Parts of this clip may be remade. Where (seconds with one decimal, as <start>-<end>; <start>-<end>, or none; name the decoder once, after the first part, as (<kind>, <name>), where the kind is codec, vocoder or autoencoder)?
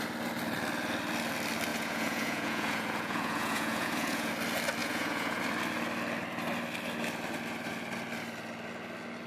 1.7-4.3 (vocoder, Vocos); 4.8-5.4